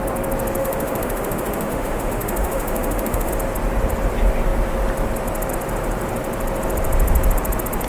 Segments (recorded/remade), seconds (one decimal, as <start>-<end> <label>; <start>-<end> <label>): 0.0-0.6 recorded; 0.6-3.3 remade; 3.3-7.9 recorded